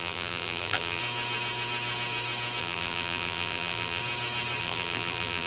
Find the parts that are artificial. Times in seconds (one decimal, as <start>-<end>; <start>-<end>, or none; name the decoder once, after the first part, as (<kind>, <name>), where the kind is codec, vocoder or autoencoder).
0.0-1.0 (vocoder, BigVGAN v2); 2.6-4.0; 4.6-5.5